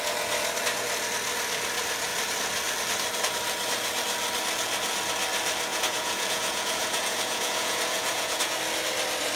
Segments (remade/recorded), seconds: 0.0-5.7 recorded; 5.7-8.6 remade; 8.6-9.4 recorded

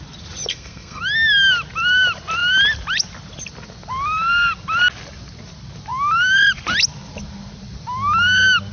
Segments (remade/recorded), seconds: 0.0-0.5 recorded; 0.5-1.0 remade; 1.0-8.7 recorded

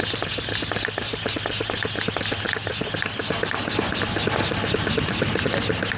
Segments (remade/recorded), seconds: 0.0-6.0 recorded